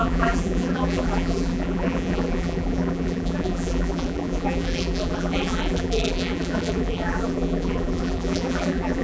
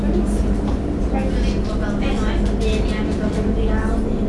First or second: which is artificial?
first